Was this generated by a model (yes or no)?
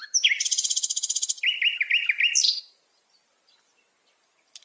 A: no